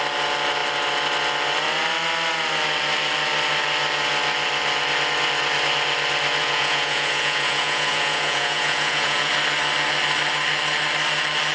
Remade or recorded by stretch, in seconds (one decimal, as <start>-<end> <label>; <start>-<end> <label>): 0.0-6.4 recorded; 6.4-9.3 remade; 9.3-11.5 recorded